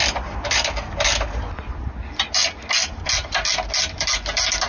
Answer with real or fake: real